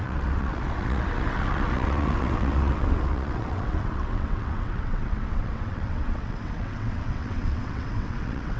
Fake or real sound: fake